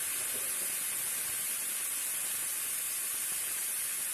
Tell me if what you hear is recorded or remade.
recorded